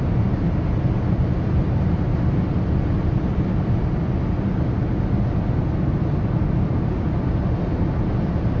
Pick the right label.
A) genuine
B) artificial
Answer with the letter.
A